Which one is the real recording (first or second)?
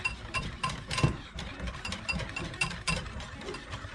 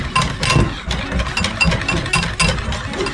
second